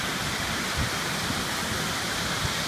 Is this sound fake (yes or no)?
no